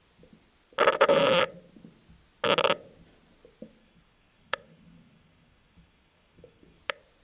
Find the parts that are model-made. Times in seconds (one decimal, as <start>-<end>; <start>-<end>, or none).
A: 3.8-6.8